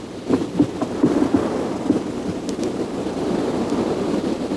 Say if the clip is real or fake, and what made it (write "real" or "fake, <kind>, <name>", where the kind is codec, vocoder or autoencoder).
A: real